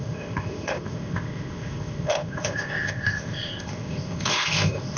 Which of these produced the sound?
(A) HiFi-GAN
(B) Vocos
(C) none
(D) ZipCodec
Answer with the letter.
D